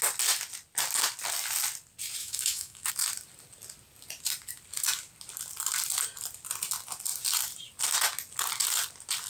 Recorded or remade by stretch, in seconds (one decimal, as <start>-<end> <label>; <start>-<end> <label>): 0.0-2.2 recorded; 2.2-2.9 remade; 2.9-9.3 recorded

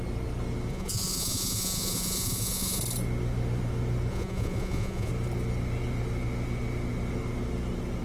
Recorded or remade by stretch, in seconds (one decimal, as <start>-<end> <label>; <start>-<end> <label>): 0.0-0.7 recorded; 0.7-2.8 remade; 2.8-4.1 recorded; 4.1-5.1 remade; 5.1-8.0 recorded

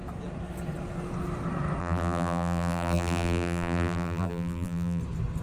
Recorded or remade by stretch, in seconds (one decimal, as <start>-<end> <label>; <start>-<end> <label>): 0.0-1.8 recorded; 1.8-5.0 remade; 5.0-5.4 recorded

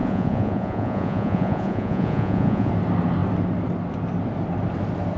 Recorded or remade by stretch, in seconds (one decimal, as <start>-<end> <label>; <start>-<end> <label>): 0.0-2.7 remade; 2.7-5.2 recorded

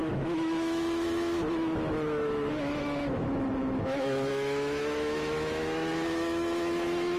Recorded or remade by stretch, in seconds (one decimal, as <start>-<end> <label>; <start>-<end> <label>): 0.0-7.2 remade

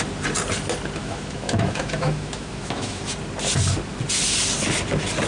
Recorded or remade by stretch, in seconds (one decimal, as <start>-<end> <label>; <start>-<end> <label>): 0.0-1.0 recorded; 1.0-3.0 remade; 3.0-5.3 recorded

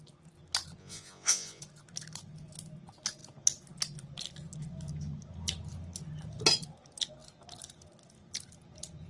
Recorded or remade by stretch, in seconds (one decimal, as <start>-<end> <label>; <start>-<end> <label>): 0.0-0.8 recorded; 0.8-1.6 remade; 1.6-9.1 recorded

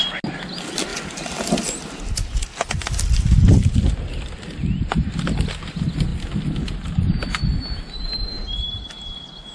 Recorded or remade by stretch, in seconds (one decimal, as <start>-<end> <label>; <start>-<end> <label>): 0.0-9.5 recorded